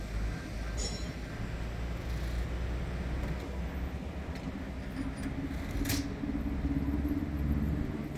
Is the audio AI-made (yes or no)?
no